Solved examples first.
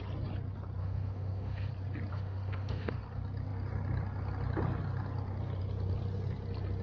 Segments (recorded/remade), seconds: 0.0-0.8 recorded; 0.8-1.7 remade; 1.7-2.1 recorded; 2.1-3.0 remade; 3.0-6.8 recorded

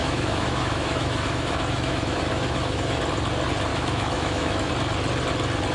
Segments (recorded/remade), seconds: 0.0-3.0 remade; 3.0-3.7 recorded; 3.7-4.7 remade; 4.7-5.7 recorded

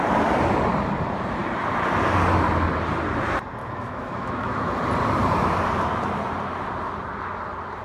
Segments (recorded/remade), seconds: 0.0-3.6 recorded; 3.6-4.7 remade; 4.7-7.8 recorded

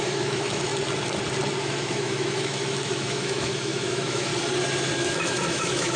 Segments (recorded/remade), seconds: 0.0-0.7 remade; 0.7-1.6 recorded; 1.6-4.3 remade; 4.3-5.0 recorded; 5.0-6.0 remade

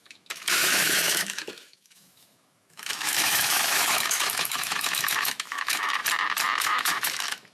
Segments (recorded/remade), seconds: 0.0-6.0 remade; 6.0-6.6 recorded; 6.6-7.5 remade